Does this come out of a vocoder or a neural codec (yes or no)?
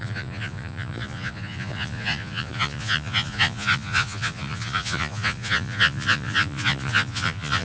yes